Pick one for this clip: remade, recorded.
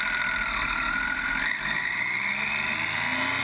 recorded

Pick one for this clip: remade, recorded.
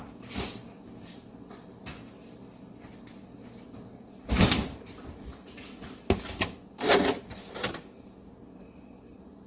recorded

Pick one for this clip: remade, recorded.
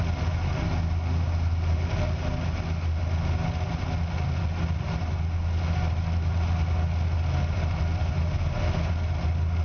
recorded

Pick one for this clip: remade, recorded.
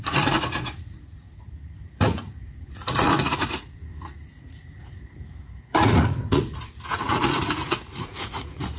remade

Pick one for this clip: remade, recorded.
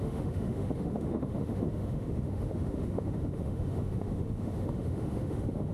remade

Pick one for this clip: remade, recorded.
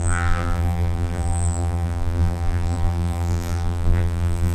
remade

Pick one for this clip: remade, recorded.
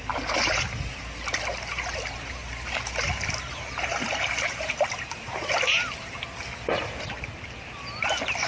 recorded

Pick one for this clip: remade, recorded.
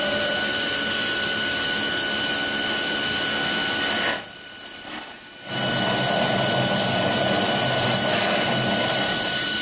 recorded